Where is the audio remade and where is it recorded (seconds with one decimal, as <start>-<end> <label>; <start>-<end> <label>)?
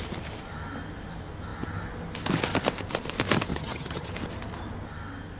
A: 0.0-3.5 recorded; 3.5-4.1 remade; 4.1-5.4 recorded